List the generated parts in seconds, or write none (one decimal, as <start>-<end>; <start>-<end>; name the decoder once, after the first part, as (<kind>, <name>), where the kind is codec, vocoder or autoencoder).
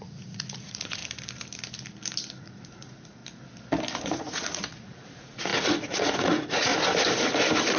0.0-1.0 (vocoder, Vocos); 2.4-3.2; 4.0-6.7